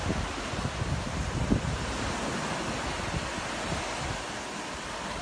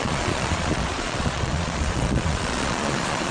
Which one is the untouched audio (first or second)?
first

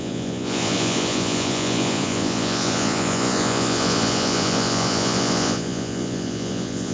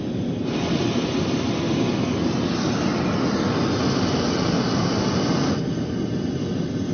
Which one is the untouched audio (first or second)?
second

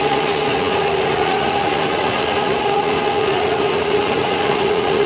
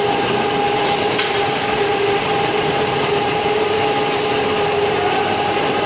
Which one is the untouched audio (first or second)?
second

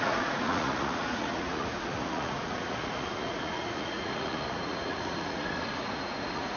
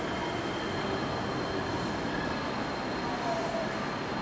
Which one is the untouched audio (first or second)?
second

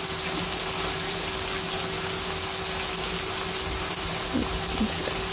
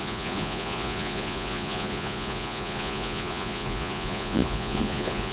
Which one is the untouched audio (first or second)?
first